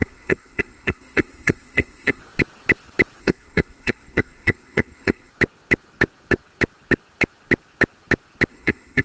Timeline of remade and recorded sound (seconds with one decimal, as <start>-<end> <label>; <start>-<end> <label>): 0.0-2.2 remade; 2.2-3.2 recorded; 3.2-5.3 remade; 5.3-8.5 recorded; 8.5-9.0 remade